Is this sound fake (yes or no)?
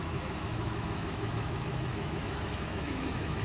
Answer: yes